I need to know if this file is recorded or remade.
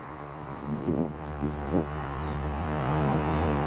remade